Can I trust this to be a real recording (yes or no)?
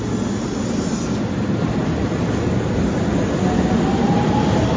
yes